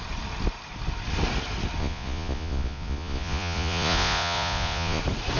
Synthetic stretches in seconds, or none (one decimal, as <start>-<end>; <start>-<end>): 1.8-5.0